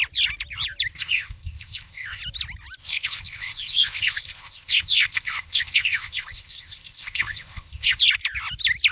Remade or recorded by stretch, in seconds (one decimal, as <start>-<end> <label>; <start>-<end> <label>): 0.0-0.9 recorded; 0.9-2.2 remade; 2.2-2.8 recorded; 2.8-8.0 remade; 8.0-8.9 recorded